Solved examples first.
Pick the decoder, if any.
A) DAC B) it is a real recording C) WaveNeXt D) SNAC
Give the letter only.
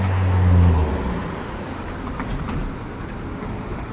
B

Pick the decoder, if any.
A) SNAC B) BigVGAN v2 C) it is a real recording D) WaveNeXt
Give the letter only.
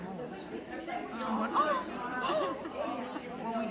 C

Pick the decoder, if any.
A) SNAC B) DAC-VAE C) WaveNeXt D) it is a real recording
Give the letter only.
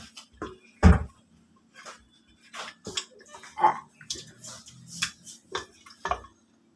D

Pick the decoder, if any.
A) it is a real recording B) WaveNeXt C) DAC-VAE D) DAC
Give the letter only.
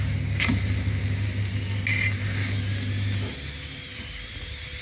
A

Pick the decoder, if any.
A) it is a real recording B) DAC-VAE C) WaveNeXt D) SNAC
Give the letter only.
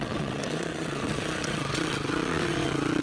C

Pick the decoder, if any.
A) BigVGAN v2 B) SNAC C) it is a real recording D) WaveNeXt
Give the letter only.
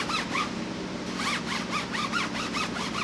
C